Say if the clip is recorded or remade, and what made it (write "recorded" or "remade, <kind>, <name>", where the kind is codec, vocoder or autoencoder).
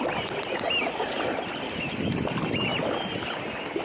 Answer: remade, vocoder, BigVGAN v2